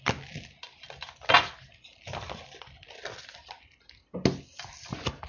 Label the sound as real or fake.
real